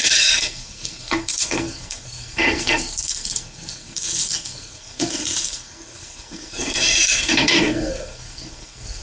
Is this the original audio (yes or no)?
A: no